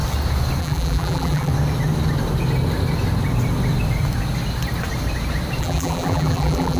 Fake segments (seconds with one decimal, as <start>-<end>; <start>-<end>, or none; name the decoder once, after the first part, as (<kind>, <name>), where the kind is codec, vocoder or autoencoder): 0.6-1.5 (vocoder, BigVGAN v2); 5.6-6.8